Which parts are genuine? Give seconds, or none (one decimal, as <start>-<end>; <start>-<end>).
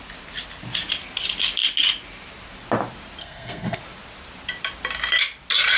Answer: 0.0-3.2; 3.8-5.8